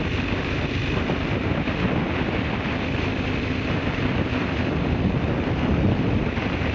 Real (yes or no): no